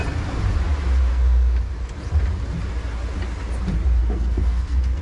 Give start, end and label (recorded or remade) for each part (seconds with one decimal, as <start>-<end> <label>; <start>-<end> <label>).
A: 0.0-1.1 recorded; 1.1-1.7 remade; 1.7-4.0 recorded; 4.0-5.0 remade